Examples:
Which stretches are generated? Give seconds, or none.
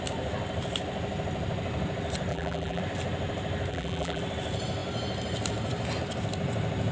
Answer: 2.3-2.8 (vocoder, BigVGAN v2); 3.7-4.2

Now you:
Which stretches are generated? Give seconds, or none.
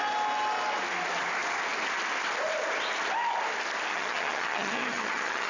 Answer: 3.9-5.5 (vocoder, HiFi-GAN)